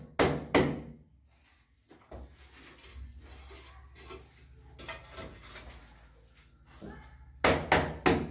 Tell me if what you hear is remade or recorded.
recorded